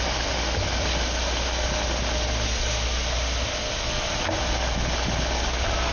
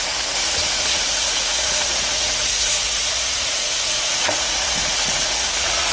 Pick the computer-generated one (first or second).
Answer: second